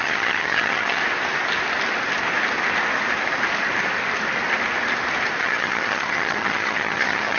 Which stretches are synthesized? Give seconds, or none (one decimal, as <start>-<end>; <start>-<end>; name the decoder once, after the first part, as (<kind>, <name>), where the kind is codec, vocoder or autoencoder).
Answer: 0.0-1.0 (vocoder, HiFi-GAN); 5.4-7.4